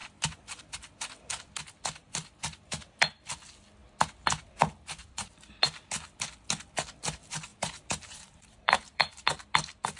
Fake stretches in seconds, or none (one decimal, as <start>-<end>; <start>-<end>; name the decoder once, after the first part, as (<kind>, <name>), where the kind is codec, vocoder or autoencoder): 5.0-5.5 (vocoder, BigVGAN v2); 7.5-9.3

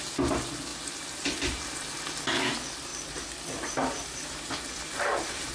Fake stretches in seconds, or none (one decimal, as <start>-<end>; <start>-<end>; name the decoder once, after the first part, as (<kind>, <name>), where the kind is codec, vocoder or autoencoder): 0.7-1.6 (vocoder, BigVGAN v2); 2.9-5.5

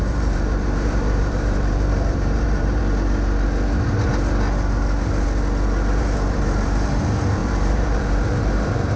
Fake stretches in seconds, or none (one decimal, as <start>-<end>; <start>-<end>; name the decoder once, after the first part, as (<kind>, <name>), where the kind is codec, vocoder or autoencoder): 0.0-2.8 (vocoder, BigVGAN v2); 6.0-9.0

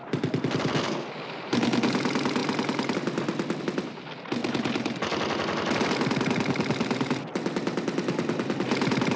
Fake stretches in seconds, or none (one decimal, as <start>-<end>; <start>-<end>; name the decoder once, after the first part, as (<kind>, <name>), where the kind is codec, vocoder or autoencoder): none